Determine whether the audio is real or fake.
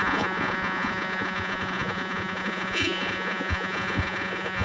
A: fake